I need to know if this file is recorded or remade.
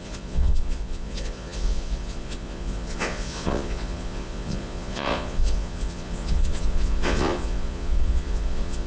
remade